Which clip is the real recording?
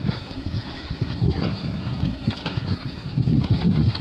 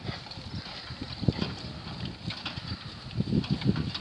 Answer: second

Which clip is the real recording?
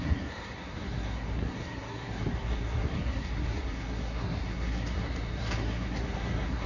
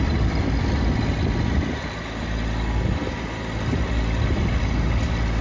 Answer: second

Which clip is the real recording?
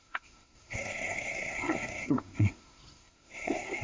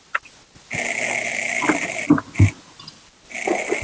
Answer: second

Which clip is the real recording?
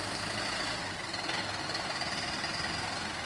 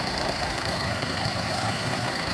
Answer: first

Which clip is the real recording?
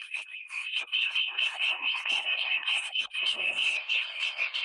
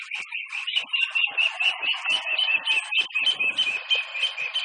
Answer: second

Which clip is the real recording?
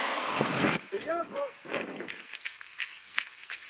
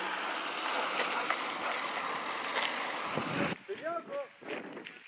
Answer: second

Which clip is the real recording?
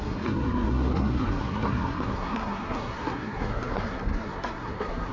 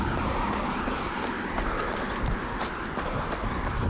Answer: second